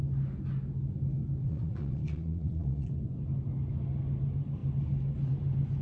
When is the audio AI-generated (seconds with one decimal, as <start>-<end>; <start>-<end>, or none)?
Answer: 1.4-2.9